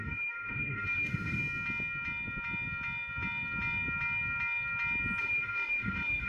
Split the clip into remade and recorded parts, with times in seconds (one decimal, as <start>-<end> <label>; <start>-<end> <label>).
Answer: 0.0-1.4 remade; 1.4-5.2 recorded; 5.2-6.3 remade